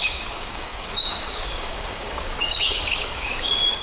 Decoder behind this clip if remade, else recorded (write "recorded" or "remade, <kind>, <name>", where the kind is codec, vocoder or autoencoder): remade, codec, DAC